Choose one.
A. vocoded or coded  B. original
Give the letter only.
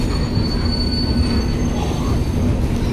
B